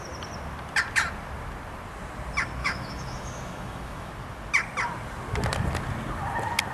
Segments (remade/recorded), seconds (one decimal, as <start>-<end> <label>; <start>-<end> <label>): 0.0-2.6 recorded; 2.6-4.1 remade; 4.1-6.7 recorded